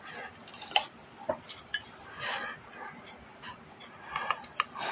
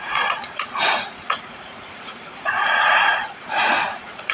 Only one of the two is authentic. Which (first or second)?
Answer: first